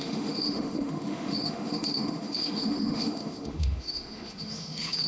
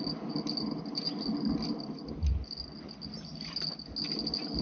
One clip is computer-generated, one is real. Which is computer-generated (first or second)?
first